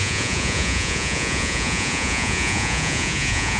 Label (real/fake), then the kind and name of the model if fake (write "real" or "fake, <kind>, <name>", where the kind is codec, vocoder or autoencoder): fake, vocoder, Vocos